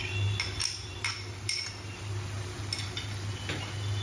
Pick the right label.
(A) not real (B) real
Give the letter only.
B